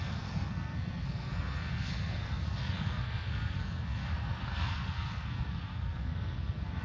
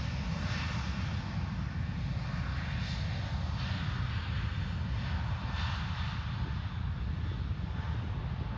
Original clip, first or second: second